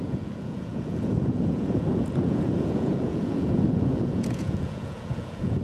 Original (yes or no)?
no